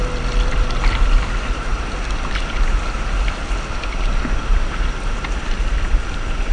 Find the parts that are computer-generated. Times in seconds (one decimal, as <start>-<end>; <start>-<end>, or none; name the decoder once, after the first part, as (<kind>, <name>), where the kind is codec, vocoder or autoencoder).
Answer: 0.0-1.7 (vocoder, BigVGAN v2); 5.4-6.5